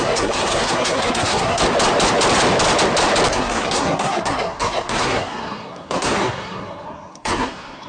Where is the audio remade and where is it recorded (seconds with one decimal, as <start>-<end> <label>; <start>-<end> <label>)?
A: 0.0-1.6 remade; 1.6-3.3 recorded; 3.3-7.9 remade